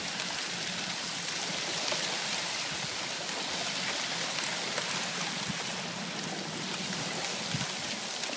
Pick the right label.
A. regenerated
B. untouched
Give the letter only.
B